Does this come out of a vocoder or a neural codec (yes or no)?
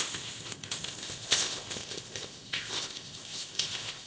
yes